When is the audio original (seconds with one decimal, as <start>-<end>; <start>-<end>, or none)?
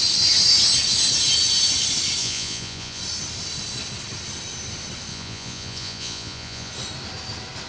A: 0.0-2.2; 3.0-5.1; 6.7-7.7